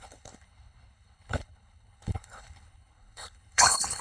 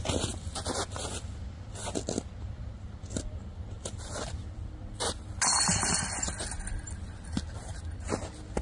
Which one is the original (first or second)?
second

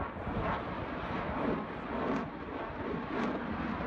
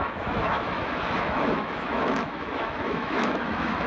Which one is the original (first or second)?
first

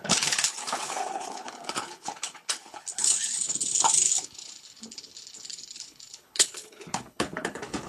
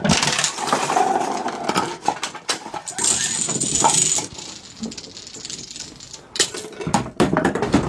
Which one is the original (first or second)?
second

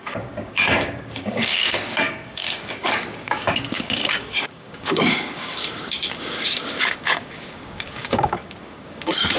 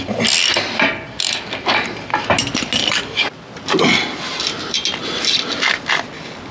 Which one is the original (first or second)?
second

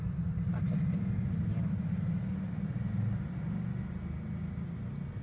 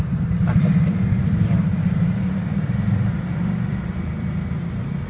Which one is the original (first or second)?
first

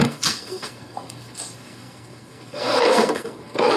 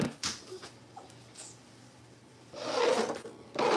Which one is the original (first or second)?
second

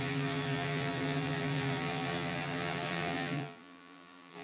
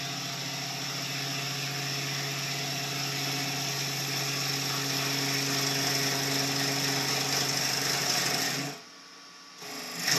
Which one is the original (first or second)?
second